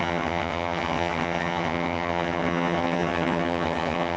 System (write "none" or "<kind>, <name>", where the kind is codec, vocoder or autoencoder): vocoder, HiFi-GAN